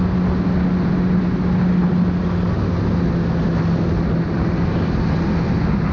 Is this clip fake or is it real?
real